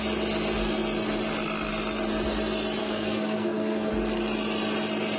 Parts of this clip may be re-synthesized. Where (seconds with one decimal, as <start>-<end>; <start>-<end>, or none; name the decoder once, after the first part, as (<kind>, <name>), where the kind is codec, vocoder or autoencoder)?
2.8-3.9 (codec, SNAC)